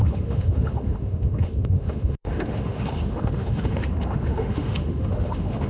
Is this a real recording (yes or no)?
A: no